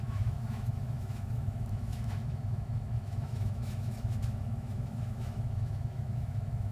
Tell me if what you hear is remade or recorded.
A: remade